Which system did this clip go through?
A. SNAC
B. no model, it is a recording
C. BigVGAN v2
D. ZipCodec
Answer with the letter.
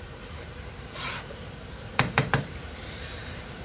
C